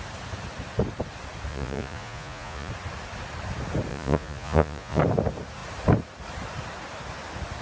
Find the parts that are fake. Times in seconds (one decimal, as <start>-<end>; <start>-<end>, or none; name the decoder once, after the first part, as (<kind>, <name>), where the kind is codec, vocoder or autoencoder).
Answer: 1.5-2.7 (vocoder, Vocos); 3.9-5.0